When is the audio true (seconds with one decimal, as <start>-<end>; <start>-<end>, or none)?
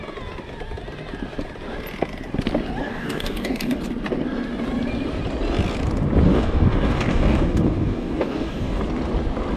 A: 0.0-2.8; 3.8-6.3; 8.8-9.6